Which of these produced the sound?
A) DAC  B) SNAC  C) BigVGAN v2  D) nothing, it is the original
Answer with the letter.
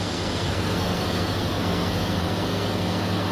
B